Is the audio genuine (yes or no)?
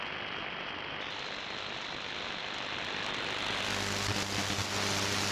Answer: yes